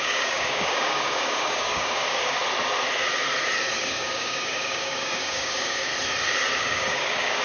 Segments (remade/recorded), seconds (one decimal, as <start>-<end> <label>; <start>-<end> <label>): 0.0-2.4 remade; 2.4-3.8 recorded; 3.8-5.9 remade; 5.9-6.6 recorded; 6.6-7.4 remade